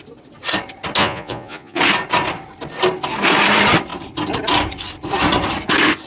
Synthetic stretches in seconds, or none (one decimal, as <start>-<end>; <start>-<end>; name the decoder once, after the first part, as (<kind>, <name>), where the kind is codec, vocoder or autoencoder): 1.0-1.8 (vocoder, Vocos)